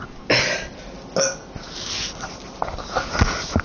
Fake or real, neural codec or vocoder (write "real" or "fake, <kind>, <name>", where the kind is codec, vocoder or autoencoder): real